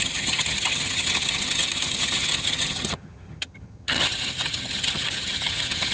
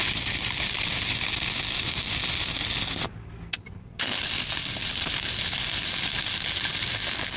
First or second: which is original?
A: second